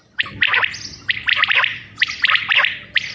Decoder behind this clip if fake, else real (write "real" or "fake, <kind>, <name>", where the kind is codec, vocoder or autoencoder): real